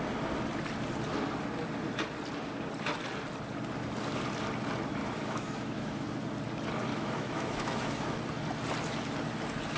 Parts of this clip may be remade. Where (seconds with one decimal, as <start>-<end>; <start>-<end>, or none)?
5.0-6.1; 6.9-8.2